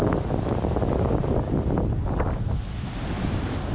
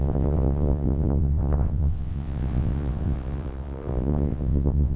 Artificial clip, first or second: second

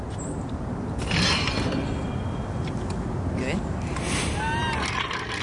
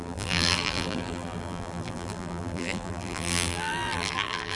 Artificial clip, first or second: second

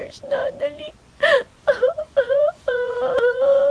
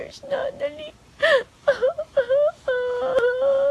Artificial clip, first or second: first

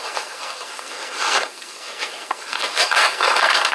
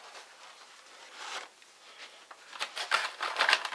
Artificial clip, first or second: first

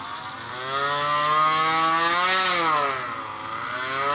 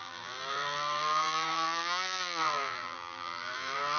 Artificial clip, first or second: second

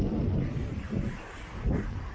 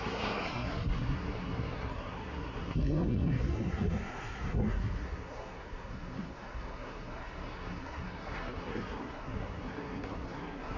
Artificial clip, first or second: second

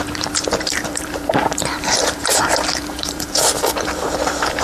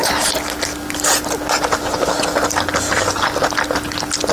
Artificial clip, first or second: first